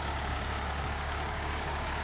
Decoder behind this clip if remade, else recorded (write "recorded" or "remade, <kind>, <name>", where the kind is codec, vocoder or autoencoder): remade, codec, DAC